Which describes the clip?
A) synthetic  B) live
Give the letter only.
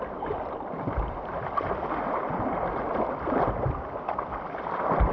B